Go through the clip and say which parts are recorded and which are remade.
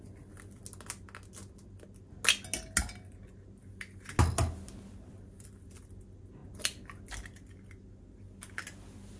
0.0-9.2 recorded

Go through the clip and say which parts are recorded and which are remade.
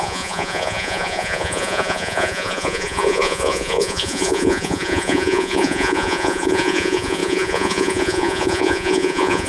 0.0-9.5 remade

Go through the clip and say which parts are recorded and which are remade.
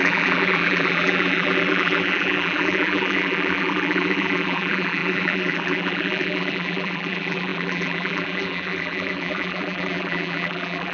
0.0-10.9 remade